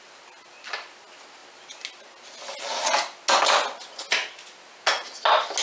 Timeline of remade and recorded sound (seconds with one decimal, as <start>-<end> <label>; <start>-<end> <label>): 0.0-5.6 recorded